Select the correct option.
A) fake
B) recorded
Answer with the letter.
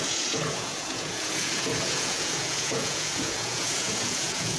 A